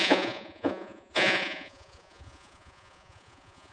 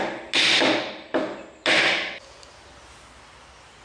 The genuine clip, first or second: second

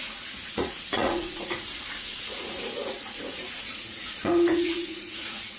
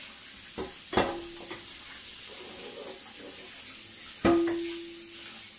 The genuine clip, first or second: second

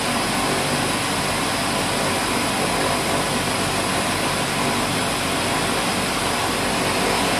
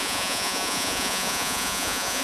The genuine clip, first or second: first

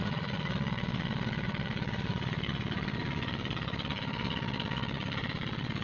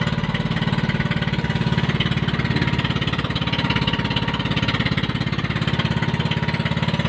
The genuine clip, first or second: second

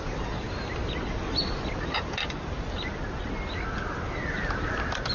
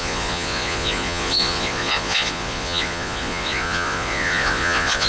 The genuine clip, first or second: first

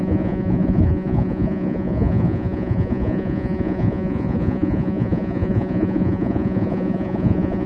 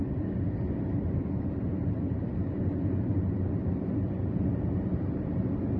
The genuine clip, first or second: second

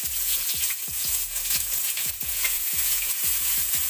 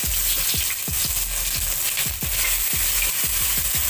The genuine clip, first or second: second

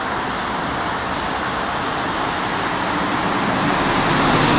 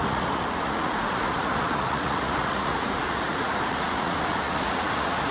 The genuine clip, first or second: first